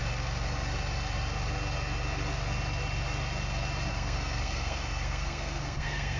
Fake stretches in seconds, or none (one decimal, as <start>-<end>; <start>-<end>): 3.9-6.2